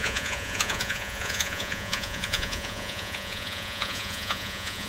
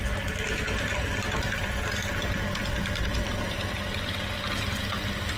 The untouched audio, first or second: second